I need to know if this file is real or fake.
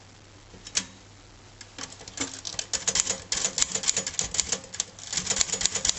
real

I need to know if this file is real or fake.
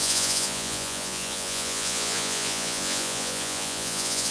fake